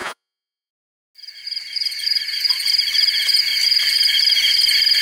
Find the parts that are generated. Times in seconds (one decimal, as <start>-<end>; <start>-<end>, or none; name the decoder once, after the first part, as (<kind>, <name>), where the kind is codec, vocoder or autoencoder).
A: 0.0-0.7 (vocoder, Vocos)